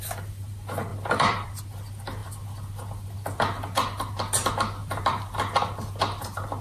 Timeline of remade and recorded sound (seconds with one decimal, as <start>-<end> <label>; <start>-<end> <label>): 0.0-0.9 recorded; 0.9-1.6 remade; 1.6-4.8 recorded; 4.8-5.4 remade; 5.4-6.6 recorded